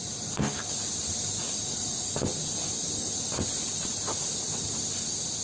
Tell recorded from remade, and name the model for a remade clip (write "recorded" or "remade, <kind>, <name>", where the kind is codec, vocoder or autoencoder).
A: recorded